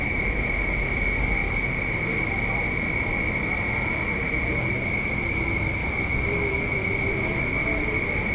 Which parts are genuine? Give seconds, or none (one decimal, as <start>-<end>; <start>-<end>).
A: 0.0-8.3